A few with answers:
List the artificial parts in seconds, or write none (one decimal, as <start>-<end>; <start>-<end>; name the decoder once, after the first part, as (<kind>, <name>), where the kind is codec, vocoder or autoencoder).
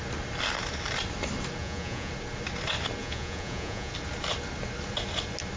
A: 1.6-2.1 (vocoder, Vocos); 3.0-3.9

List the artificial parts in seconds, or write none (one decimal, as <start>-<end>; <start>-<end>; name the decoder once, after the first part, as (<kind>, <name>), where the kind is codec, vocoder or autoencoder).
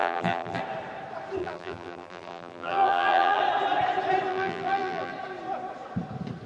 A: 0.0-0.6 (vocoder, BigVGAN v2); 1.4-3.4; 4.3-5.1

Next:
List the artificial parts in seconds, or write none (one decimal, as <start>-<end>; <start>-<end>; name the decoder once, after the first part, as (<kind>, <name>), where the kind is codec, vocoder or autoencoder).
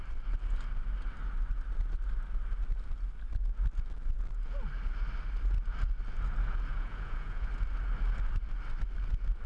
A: 6.7-7.5 (vocoder, Vocos)